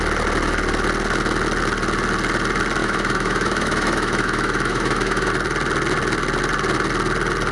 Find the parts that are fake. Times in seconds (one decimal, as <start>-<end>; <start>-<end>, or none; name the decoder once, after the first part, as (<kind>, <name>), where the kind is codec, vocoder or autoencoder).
2.8-5.3 (autoencoder, DAC-VAE)